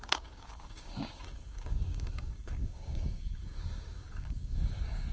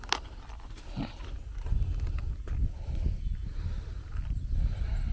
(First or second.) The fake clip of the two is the first